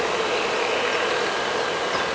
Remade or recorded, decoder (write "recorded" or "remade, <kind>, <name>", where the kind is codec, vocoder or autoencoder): recorded